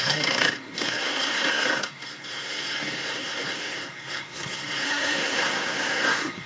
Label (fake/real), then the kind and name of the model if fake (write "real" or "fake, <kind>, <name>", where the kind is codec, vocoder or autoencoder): fake, codec, SNAC